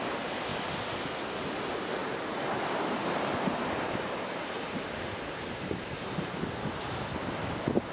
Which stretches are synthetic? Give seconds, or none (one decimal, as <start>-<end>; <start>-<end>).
2.0-6.6; 7.1-7.9